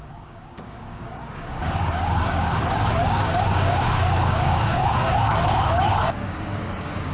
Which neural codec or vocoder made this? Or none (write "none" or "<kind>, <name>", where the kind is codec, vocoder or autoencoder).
codec, DAC